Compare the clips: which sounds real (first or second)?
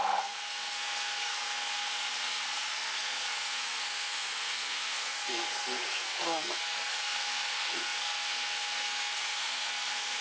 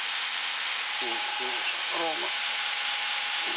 second